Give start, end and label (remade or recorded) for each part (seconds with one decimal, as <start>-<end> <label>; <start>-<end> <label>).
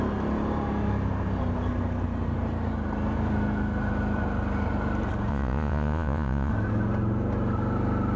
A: 0.0-5.3 recorded; 5.3-6.5 remade; 6.5-8.2 recorded